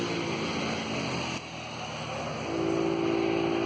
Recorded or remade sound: recorded